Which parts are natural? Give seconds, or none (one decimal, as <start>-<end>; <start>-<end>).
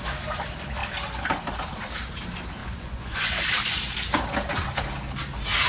0.0-2.6; 3.3-5.7